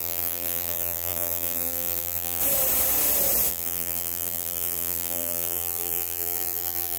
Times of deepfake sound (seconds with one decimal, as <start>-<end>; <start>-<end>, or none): 0.0-2.4; 3.5-7.0